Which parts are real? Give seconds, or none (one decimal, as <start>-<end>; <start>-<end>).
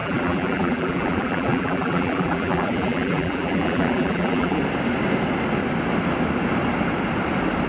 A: 4.6-7.7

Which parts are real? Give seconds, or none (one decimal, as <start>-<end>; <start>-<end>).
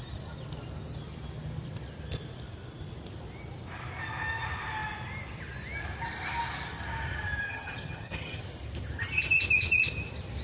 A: 0.0-7.4; 8.4-10.4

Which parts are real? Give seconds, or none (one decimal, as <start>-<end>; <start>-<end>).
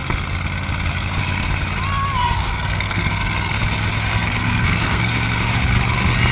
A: 0.0-2.2; 3.6-4.1; 5.1-6.3